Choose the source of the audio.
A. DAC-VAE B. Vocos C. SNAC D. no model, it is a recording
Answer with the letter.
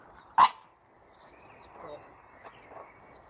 D